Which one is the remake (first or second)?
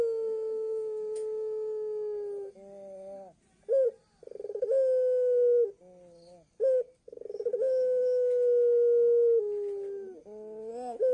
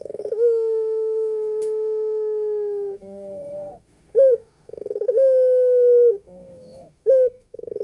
second